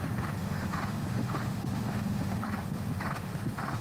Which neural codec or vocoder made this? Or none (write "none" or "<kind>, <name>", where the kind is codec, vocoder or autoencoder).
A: autoencoder, DAC-VAE